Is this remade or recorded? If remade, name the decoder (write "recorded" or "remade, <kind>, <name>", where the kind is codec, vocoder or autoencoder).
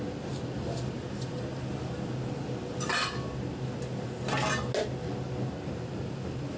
recorded